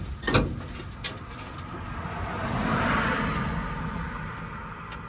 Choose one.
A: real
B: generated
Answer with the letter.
A